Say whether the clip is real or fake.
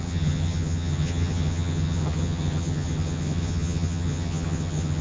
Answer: fake